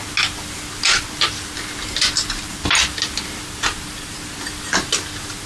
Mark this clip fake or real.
real